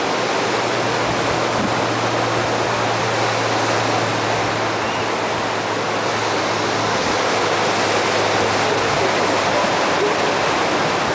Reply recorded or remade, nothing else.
recorded